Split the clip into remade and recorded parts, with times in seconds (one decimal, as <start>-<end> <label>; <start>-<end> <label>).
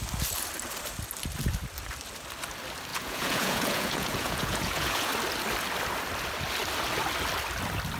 0.0-2.9 recorded; 2.9-5.1 remade; 5.1-8.0 recorded